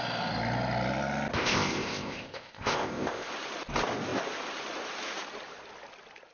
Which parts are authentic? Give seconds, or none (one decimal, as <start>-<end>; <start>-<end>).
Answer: 0.0-1.3; 3.3-6.3